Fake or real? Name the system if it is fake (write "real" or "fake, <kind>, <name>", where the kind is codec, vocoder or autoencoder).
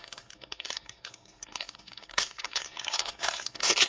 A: fake, codec, SNAC